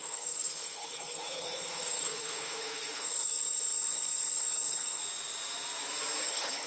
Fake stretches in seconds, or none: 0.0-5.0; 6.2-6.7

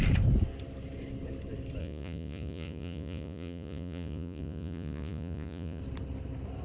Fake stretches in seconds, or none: 1.8-5.8

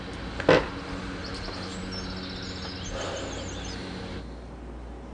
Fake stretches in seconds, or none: none

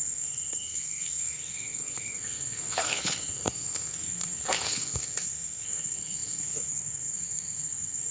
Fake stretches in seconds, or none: 0.0-8.1